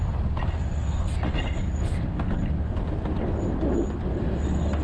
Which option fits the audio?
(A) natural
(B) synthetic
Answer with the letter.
A